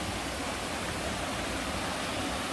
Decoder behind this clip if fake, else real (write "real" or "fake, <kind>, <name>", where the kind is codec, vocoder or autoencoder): real